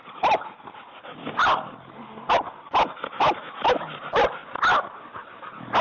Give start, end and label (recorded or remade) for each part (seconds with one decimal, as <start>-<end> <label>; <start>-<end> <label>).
0.0-5.8 recorded